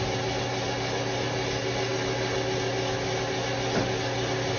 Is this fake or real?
real